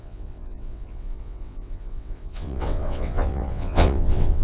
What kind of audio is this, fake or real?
fake